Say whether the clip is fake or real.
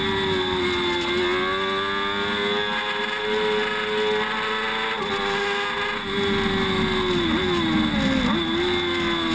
real